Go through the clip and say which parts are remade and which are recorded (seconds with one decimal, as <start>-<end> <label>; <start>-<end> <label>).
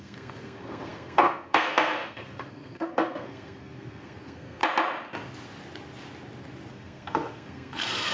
0.0-4.6 remade; 4.6-6.7 recorded; 6.7-8.1 remade